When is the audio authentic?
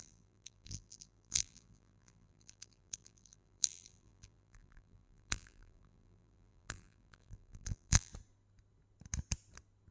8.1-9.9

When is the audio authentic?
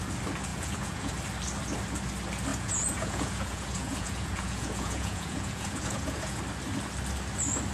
0.0-0.5; 1.1-2.5; 6.4-7.7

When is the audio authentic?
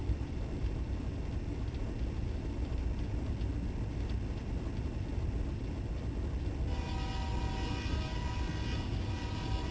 0.0-9.7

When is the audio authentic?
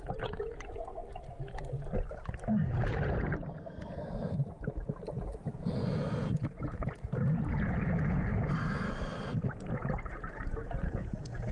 1.0-5.6; 8.3-9.7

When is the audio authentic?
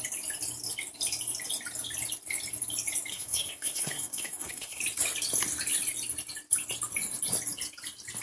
0.0-3.1; 4.8-8.2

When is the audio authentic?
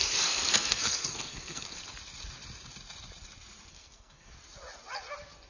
1.8-3.7; 4.3-5.5